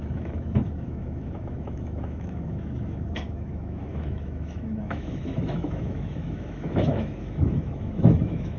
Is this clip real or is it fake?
fake